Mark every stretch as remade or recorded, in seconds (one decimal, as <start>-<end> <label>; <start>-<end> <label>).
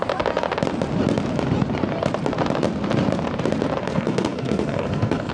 0.0-3.8 recorded; 3.8-5.3 remade